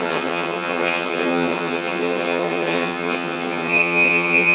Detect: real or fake fake